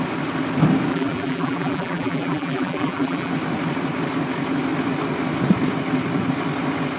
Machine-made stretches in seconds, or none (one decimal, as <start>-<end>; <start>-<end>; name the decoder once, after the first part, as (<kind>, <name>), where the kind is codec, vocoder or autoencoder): 0.9-3.3 (vocoder, BigVGAN v2)